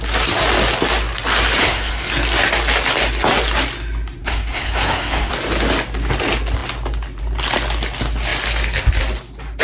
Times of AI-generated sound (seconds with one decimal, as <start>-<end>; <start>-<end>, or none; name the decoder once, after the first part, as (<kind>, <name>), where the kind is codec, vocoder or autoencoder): 1.6-2.1 (codec, SNAC); 4.2-5.3